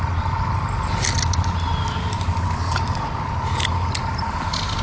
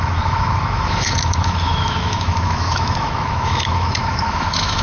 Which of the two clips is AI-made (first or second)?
second